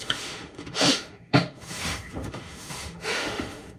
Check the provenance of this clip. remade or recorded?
remade